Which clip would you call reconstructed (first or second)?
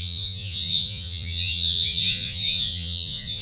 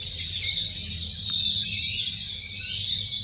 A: first